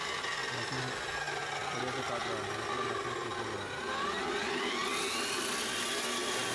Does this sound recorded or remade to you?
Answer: recorded